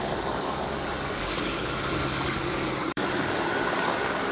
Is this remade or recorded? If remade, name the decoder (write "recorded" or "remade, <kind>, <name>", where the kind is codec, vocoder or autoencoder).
remade, codec, DAC